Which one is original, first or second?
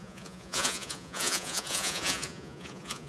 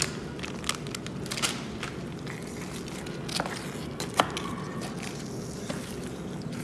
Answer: second